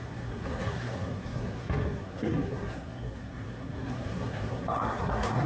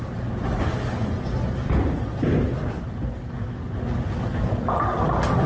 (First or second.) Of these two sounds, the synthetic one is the first